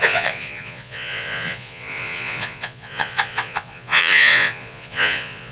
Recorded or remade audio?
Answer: remade